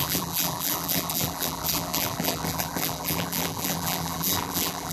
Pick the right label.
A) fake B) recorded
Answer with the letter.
A